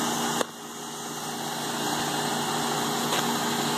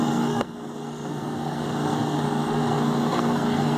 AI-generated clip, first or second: second